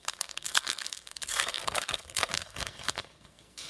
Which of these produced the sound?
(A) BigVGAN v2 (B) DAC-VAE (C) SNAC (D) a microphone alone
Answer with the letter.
C